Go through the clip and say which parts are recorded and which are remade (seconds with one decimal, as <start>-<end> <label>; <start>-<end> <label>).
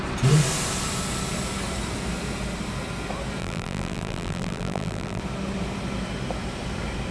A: 0.0-3.4 recorded; 3.4-5.2 remade; 5.2-7.1 recorded